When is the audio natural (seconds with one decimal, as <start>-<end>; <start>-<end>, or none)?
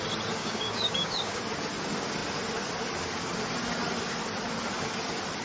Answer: 0.0-0.4; 1.4-5.4